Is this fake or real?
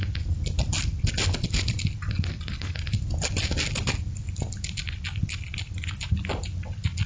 real